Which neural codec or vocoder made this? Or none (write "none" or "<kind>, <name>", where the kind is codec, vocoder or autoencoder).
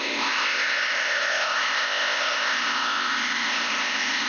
codec, ZipCodec